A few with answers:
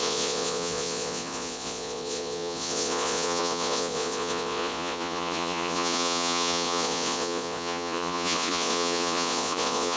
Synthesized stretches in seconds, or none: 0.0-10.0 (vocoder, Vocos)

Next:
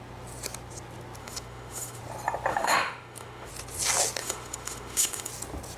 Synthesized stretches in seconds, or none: 1.2-2.0 (autoencoder, DAC-VAE); 2.5-3.5; 4.2-5.3

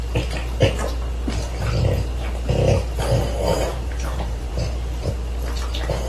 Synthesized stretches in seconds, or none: 3.5-5.1 (vocoder, BigVGAN v2)

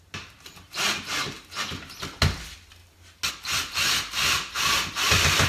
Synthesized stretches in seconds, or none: none

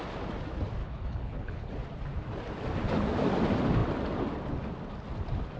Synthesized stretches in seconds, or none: 0.8-1.7 (codec, HILCodec)